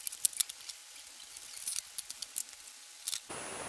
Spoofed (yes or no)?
no